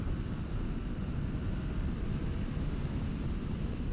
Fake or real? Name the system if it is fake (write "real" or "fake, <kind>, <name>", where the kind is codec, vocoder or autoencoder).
real